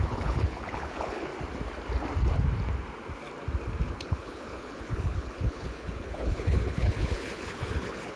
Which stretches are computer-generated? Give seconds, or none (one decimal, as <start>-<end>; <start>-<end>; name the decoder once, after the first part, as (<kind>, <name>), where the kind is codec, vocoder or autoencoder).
0.0-1.3 (codec, HILCodec); 3.9-8.2